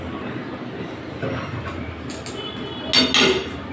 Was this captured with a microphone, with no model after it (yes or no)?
yes